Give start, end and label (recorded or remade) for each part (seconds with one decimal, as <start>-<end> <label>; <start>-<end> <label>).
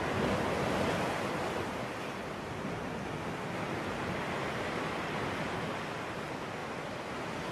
0.0-6.6 recorded; 6.6-7.5 remade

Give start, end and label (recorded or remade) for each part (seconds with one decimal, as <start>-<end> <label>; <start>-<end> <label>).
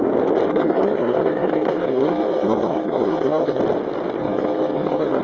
0.0-0.5 recorded; 0.5-3.6 remade; 3.6-4.2 recorded; 4.2-5.2 remade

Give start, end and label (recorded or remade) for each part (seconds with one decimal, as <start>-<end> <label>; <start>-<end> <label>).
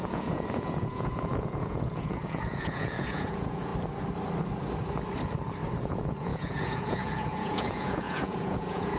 0.0-3.7 remade; 3.7-5.8 recorded; 5.8-9.0 remade